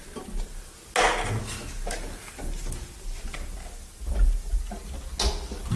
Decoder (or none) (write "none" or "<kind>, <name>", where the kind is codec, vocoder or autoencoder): none